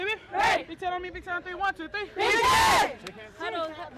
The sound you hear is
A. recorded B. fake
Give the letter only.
A